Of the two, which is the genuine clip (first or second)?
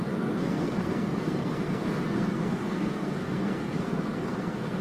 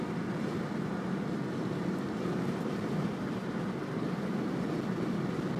second